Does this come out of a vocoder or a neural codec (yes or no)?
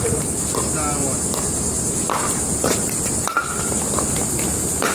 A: no